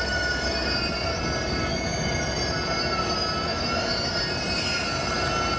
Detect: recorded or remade recorded